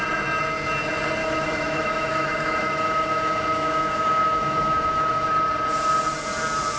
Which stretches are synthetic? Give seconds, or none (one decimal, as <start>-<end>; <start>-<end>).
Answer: 1.2-5.3